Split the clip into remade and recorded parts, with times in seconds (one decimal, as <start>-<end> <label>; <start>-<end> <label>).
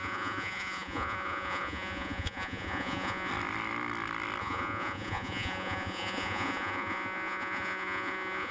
0.0-3.3 remade; 3.3-4.4 recorded; 4.4-8.5 remade